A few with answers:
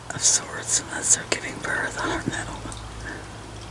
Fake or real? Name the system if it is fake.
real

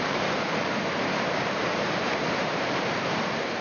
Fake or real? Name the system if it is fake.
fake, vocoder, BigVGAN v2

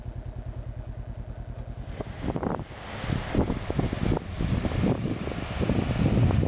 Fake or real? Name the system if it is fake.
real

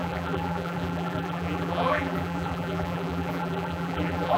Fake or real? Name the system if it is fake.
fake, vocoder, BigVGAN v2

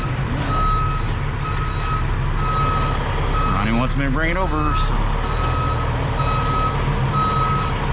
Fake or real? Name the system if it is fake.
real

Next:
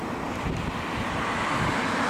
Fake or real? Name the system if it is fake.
real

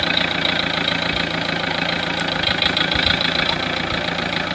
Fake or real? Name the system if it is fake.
fake, vocoder, BigVGAN v2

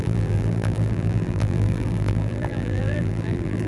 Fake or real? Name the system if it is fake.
fake, vocoder, BigVGAN v2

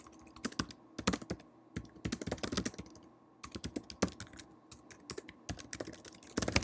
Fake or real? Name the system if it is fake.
real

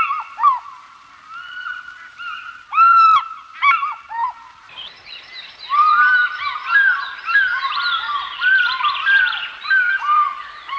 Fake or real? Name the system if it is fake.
fake, vocoder, BigVGAN v2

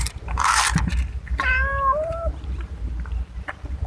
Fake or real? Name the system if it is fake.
fake, vocoder, BigVGAN v2